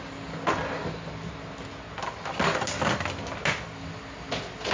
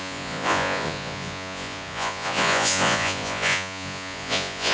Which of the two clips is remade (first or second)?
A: second